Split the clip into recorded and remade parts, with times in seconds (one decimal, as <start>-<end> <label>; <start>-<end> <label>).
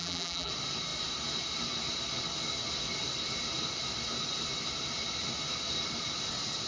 0.0-0.5 remade; 0.5-6.7 recorded